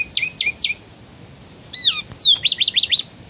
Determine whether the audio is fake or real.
real